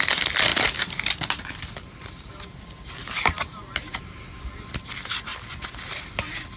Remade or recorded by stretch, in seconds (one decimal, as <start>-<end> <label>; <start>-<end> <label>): 0.0-6.6 recorded